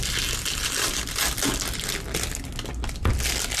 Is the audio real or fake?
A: real